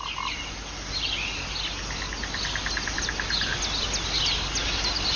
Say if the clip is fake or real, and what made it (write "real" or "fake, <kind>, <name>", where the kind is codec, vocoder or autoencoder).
real